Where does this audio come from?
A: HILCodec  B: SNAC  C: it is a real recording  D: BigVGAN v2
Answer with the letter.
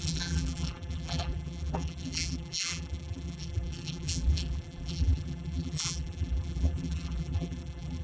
D